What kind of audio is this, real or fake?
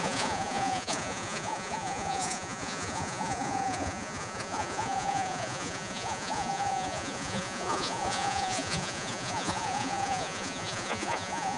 fake